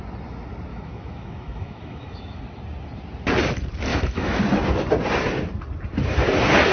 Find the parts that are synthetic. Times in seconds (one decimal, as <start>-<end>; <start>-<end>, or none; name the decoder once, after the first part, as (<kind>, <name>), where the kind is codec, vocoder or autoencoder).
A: 0.7-2.4 (autoencoder, DAC-VAE); 3.9-4.4